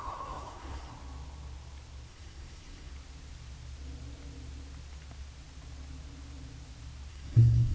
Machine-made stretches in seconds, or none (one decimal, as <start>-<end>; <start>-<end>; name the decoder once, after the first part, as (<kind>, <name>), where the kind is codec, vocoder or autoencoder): 0.0-0.9 (codec, SNAC); 2.1-2.9; 7.1-7.7